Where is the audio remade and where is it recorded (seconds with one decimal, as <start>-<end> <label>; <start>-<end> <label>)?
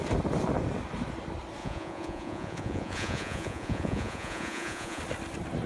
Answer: 0.0-1.6 recorded; 1.6-5.0 remade; 5.0-5.7 recorded